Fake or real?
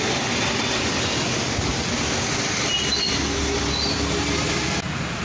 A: real